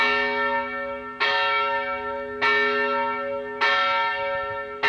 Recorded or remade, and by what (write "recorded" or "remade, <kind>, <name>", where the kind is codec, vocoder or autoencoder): recorded